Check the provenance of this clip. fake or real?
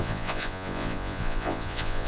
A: fake